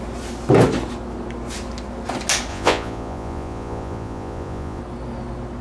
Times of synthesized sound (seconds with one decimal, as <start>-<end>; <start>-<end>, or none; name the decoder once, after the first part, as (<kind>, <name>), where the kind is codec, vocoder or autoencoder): 2.5-4.8 (vocoder, Vocos)